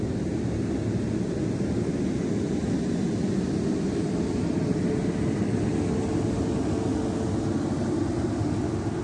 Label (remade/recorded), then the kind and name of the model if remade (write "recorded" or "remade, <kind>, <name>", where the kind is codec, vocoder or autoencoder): recorded